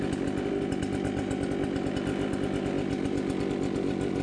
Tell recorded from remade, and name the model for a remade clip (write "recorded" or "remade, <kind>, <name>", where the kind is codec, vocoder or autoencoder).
recorded